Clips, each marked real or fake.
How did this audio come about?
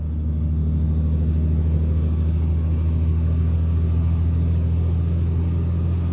real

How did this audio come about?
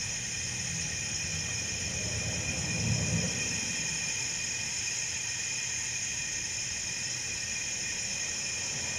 fake